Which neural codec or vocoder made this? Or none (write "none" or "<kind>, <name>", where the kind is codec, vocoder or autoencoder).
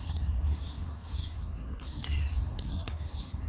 codec, SNAC